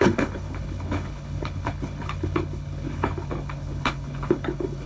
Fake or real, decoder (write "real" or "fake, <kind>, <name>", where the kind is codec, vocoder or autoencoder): fake, codec, HILCodec